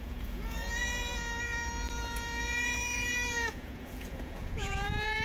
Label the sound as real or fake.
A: fake